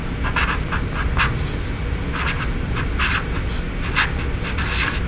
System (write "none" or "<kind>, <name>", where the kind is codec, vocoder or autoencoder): none